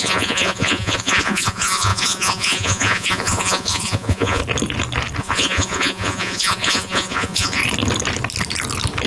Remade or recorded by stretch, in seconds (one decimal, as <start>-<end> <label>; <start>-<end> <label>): 0.0-4.4 remade; 4.4-5.2 recorded; 5.2-7.6 remade; 7.6-9.1 recorded

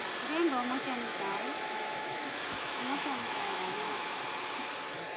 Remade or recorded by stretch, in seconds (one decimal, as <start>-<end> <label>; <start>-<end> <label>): 0.0-1.1 recorded; 1.1-4.2 remade; 4.2-5.2 recorded

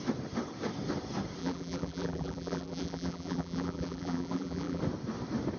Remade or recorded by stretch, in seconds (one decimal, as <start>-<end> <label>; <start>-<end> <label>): 0.0-1.4 recorded; 1.4-4.8 remade; 4.8-5.6 recorded

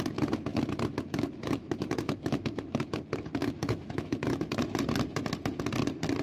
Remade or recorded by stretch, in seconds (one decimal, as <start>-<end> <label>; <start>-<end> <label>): 0.0-0.5 recorded; 0.5-3.0 remade; 3.0-3.4 recorded; 3.4-4.3 remade; 4.3-6.2 recorded

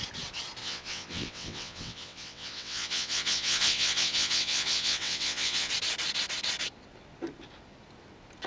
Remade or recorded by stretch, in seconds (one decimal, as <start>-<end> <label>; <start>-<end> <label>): 0.0-0.6 recorded; 0.6-5.7 remade; 5.7-8.5 recorded